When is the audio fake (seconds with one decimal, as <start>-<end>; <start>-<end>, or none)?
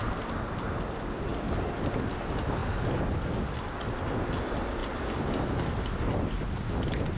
none